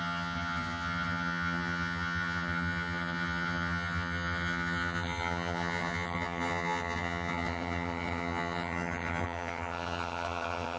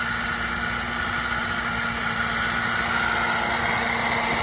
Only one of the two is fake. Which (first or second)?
first